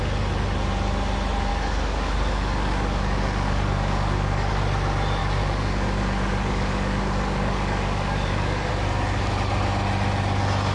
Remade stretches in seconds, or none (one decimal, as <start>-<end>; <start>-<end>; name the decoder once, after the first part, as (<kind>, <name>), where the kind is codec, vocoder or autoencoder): 1.5-4.5 (codec, DAC); 5.2-8.7